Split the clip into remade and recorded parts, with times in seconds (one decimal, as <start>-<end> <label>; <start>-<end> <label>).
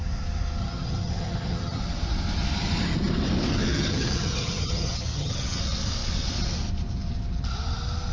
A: 0.0-0.6 recorded; 0.6-1.8 remade; 1.8-3.5 recorded; 3.5-5.6 remade; 5.6-8.1 recorded